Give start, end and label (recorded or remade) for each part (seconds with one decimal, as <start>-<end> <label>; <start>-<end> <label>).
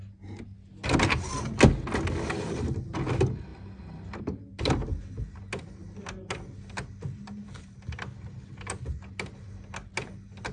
0.0-10.5 recorded